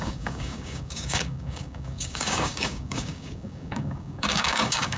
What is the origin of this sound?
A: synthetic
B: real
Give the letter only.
A